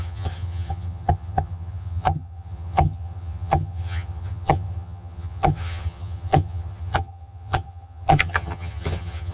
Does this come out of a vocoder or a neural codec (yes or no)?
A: yes